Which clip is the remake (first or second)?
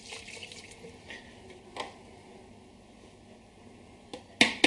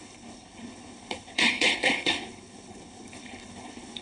second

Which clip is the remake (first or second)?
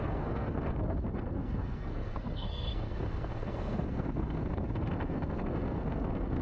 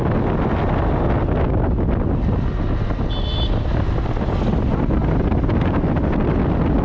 first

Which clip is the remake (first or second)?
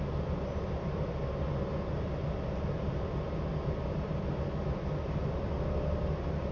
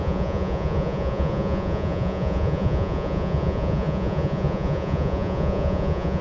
second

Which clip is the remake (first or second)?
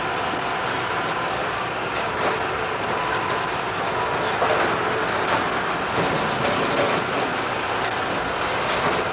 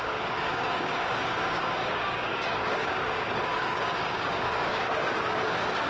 second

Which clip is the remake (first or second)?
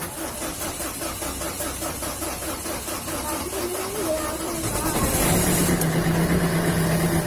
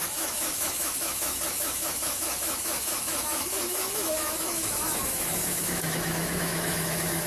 second